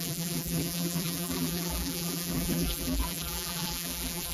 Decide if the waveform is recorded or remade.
remade